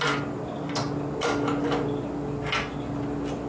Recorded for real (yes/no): yes